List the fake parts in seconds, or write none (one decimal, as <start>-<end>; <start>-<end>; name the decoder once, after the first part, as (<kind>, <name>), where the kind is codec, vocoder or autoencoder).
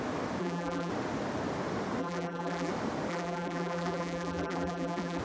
0.4-0.9 (vocoder, BigVGAN v2); 2.0-2.7; 3.1-5.2